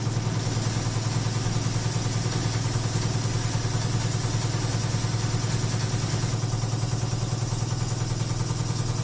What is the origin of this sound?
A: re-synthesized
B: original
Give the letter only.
B